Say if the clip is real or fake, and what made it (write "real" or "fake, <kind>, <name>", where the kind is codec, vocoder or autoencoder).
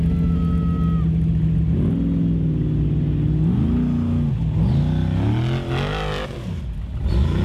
real